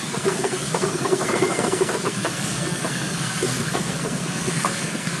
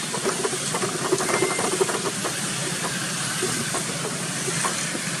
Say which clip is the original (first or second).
second